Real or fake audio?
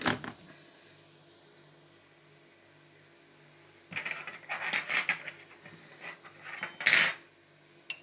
real